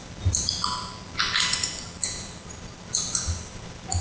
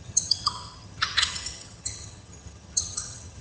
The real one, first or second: first